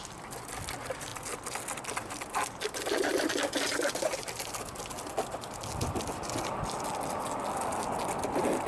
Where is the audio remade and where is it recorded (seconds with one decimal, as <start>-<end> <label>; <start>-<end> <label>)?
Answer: 0.0-3.1 recorded; 3.1-6.2 remade; 6.2-8.7 recorded